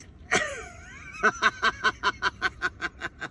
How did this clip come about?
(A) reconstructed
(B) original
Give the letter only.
A